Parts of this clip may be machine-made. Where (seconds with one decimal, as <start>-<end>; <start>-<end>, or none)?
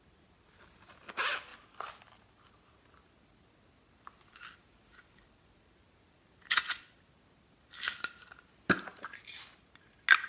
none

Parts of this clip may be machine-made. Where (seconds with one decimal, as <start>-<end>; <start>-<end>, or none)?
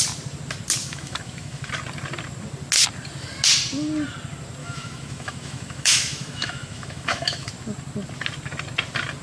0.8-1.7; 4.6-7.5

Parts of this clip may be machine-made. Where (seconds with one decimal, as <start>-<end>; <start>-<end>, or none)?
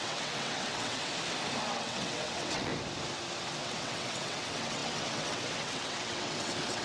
0.0-1.1; 1.7-2.7; 3.6-6.8